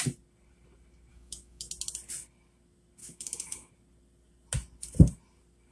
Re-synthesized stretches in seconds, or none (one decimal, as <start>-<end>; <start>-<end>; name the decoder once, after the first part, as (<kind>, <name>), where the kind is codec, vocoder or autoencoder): 1.1-1.7 (autoencoder, DAC-VAE); 3.0-3.7